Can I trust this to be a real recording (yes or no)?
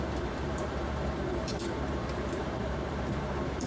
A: no